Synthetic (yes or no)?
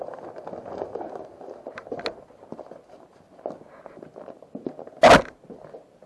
no